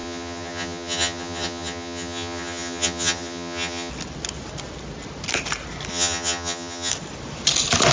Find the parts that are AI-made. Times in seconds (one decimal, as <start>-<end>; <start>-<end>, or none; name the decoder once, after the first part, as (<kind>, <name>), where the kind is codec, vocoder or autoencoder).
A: 0.0-3.9 (vocoder, HiFi-GAN); 5.9-6.9